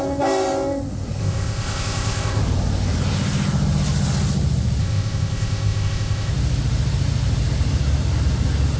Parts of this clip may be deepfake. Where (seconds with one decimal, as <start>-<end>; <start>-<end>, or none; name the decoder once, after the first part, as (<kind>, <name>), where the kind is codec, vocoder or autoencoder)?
1.2-2.4 (codec, ZipCodec); 4.8-6.3